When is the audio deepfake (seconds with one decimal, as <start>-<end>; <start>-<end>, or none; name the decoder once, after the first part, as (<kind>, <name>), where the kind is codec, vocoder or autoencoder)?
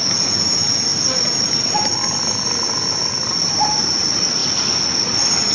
none